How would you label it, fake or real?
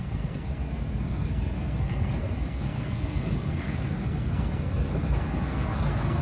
fake